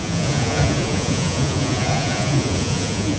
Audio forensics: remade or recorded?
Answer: remade